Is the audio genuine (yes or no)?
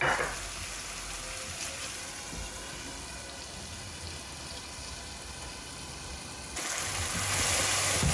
yes